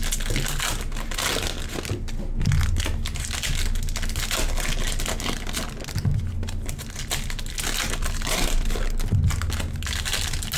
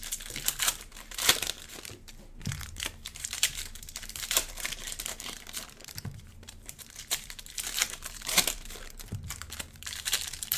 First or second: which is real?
first